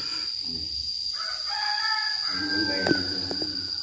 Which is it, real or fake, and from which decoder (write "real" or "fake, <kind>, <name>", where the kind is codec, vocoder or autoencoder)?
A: real